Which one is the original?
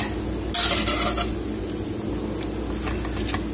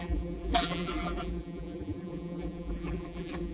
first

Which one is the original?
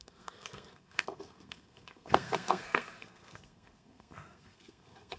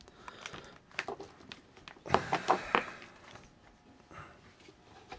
second